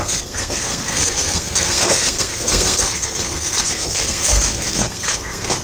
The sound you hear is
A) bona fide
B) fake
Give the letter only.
B